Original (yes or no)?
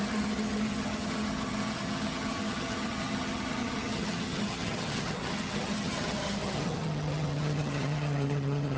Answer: no